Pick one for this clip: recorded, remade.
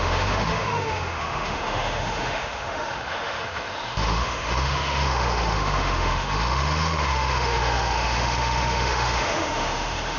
remade